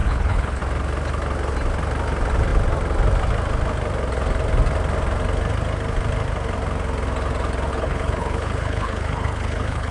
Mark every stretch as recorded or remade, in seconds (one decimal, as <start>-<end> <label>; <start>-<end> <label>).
0.0-0.6 remade; 0.6-7.7 recorded; 7.7-9.9 remade